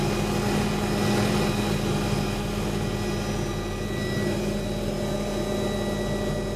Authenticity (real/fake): real